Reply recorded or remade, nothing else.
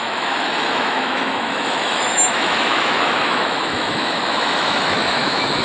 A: remade